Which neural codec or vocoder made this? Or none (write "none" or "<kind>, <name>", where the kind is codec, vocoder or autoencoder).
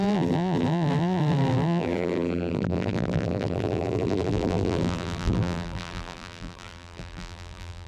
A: vocoder, BigVGAN v2